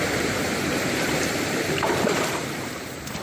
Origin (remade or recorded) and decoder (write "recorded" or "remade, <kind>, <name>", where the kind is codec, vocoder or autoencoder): remade, vocoder, BigVGAN v2